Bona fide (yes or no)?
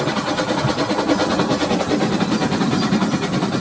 yes